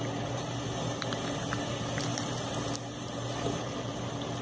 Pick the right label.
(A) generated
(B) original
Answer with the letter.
A